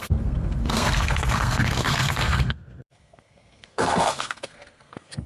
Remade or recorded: remade